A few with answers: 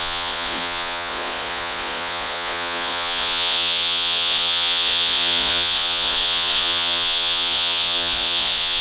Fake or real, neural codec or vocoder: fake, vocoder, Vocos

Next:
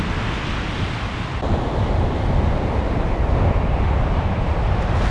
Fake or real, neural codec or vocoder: real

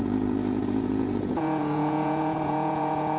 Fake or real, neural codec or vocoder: fake, vocoder, Vocos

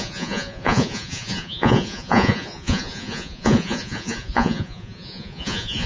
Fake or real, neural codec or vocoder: fake, vocoder, Vocos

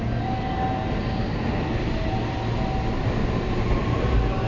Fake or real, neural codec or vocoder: real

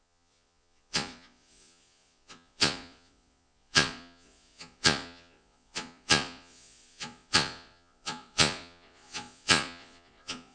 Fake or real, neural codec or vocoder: fake, vocoder, Vocos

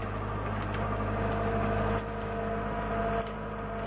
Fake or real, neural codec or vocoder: real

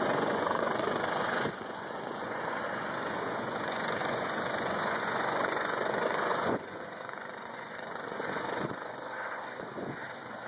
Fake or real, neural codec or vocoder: fake, vocoder, Vocos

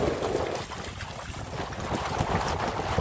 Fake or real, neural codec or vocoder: real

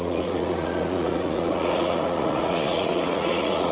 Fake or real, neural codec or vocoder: fake, vocoder, Vocos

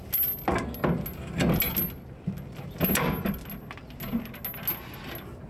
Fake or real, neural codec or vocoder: real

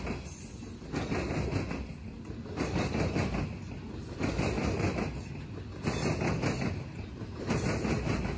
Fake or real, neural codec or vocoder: real